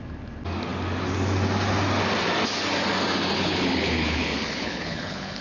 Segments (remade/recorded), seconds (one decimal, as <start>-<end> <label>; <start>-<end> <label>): 0.0-3.3 recorded; 3.3-5.4 remade